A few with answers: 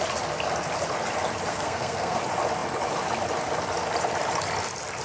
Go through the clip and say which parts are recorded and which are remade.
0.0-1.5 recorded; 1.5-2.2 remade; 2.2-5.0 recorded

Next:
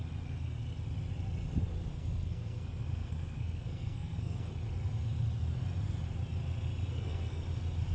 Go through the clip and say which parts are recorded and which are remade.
0.0-1.9 recorded; 1.9-4.5 remade; 4.5-6.9 recorded; 6.9-7.4 remade; 7.4-7.9 recorded

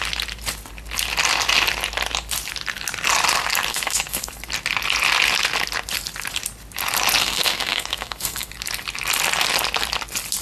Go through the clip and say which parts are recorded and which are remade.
0.0-3.7 recorded; 3.7-4.3 remade; 4.3-7.2 recorded; 7.2-8.5 remade; 8.5-10.4 recorded

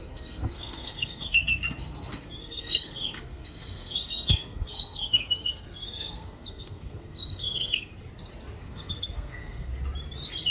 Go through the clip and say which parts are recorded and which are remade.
0.0-7.9 remade; 7.9-8.6 recorded; 8.6-9.7 remade; 9.7-10.5 recorded

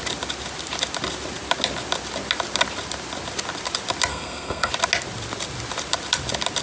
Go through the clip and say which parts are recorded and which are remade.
0.0-4.1 recorded; 4.1-4.7 remade; 4.7-6.6 recorded

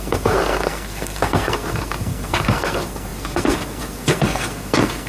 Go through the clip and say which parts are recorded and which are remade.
0.0-5.1 remade

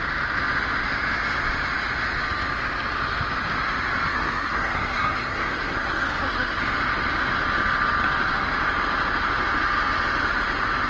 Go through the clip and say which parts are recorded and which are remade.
0.0-4.1 recorded; 4.1-6.6 remade; 6.6-10.9 recorded

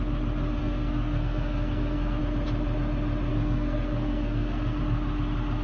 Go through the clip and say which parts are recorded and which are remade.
0.0-0.6 recorded; 0.6-2.2 remade; 2.2-3.3 recorded; 3.3-4.8 remade; 4.8-5.6 recorded